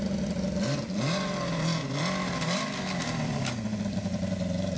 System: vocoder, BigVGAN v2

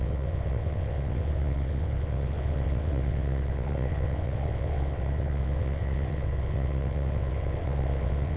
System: vocoder, WaveNeXt